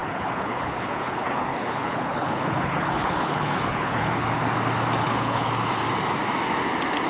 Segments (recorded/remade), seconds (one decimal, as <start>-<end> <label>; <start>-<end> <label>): 0.0-4.3 remade; 4.3-5.0 recorded; 5.0-5.5 remade; 5.5-7.1 recorded